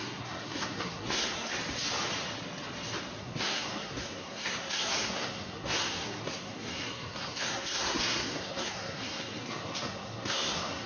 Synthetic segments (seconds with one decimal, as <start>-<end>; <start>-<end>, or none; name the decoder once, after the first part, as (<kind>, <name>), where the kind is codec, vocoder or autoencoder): 0.0-1.5 (codec, SNAC); 3.2-10.9